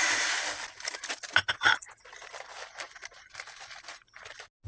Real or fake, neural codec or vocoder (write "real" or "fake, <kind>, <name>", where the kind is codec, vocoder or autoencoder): real